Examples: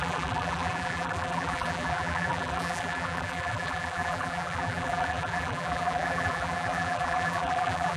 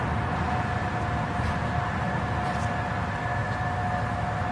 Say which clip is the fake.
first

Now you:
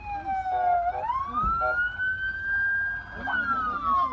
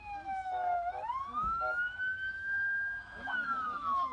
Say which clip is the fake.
second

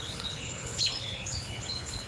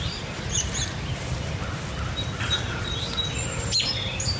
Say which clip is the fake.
first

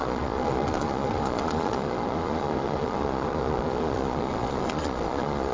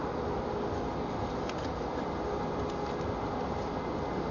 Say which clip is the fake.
first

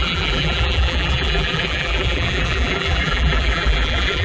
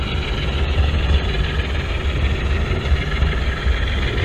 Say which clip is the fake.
first